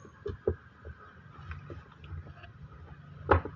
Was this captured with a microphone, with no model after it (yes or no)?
yes